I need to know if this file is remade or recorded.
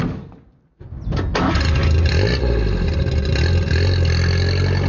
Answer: recorded